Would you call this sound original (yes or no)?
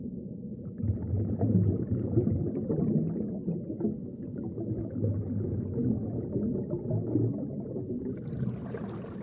yes